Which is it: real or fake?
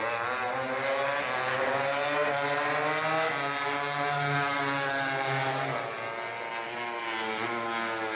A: real